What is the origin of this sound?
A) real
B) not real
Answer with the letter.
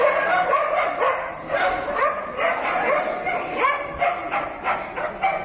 A